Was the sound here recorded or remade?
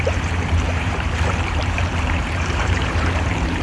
remade